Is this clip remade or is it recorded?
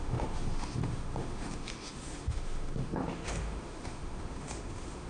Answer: remade